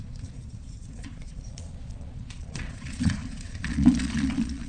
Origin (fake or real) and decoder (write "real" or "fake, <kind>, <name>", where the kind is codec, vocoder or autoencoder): fake, vocoder, Vocos